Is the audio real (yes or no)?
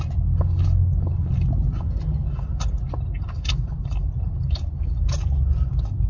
yes